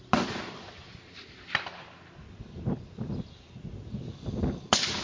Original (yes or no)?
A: yes